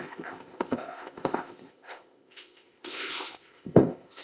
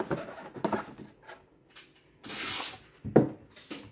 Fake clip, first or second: first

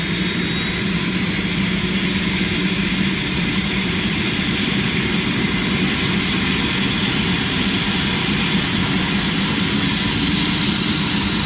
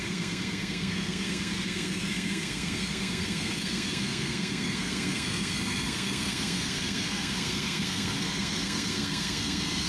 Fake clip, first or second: second